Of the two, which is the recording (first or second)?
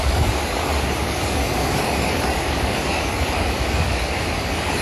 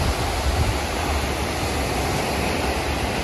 second